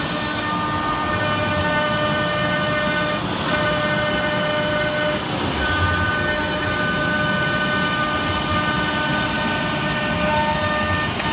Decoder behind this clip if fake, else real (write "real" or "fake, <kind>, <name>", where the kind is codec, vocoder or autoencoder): real